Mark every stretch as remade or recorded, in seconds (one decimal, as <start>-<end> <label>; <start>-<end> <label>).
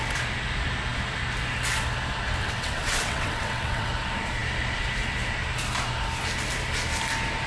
0.0-2.4 recorded; 2.4-3.9 remade; 3.9-7.5 recorded